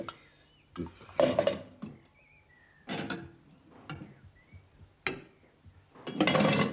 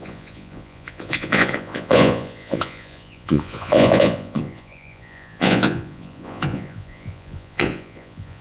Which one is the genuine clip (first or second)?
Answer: first